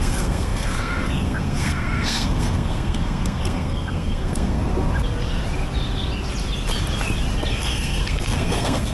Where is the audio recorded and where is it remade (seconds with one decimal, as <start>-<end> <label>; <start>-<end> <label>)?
0.0-4.7 remade; 4.7-7.5 recorded; 7.5-8.9 remade